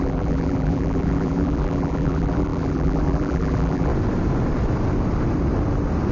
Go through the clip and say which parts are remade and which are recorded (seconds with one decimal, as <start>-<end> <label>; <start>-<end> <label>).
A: 0.0-3.9 remade; 3.9-6.1 recorded